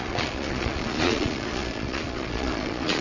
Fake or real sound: fake